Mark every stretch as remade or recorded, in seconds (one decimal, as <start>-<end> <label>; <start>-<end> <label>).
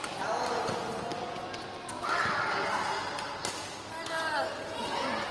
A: 0.0-5.3 recorded